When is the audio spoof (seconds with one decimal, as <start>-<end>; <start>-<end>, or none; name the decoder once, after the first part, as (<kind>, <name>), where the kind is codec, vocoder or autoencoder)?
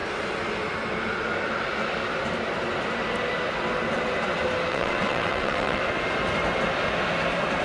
4.7-5.8 (vocoder, WaveNeXt)